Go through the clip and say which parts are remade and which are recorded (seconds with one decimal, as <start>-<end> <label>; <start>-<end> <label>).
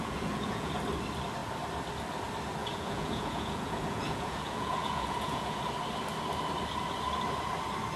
0.0-0.7 remade; 0.7-2.6 recorded; 2.6-5.6 remade; 5.6-8.0 recorded